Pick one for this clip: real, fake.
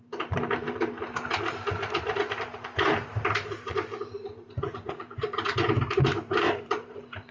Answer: fake